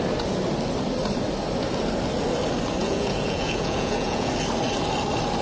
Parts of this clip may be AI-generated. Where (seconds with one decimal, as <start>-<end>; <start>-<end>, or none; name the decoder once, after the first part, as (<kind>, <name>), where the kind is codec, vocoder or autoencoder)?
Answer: 2.8-4.3 (vocoder, Vocos)